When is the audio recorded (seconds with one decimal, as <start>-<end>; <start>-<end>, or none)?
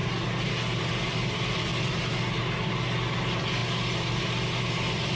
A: 0.0-5.2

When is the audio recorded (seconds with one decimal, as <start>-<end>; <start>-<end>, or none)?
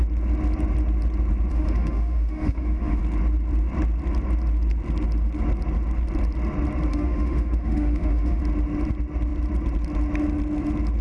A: 0.0-1.5; 3.0-6.9; 8.4-11.0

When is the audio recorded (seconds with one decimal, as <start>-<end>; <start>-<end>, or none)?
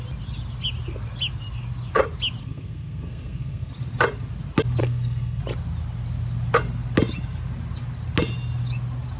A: 0.0-2.4; 3.7-4.8; 5.4-9.2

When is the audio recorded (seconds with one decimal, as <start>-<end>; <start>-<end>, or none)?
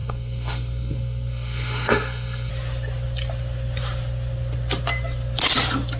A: 2.5-6.0